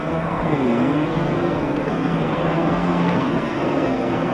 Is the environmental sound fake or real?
fake